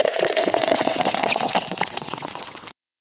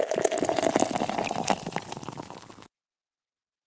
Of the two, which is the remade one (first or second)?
first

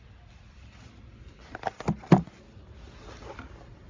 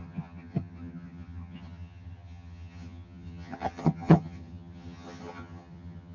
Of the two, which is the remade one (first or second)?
second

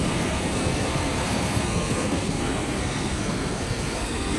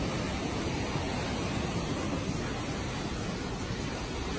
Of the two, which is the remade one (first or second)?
first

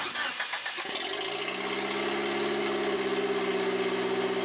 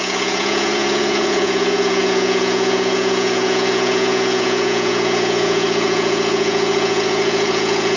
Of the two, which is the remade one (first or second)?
second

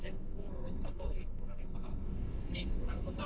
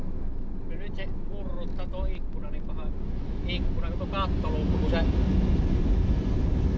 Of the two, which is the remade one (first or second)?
first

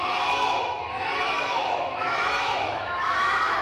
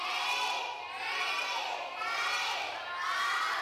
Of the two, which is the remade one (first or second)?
first